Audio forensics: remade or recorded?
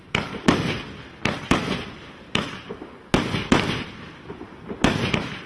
recorded